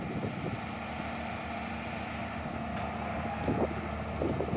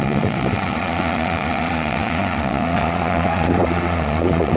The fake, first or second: second